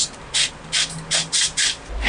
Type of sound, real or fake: real